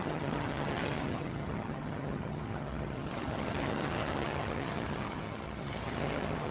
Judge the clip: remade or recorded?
remade